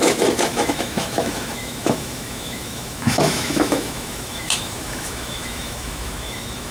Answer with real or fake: fake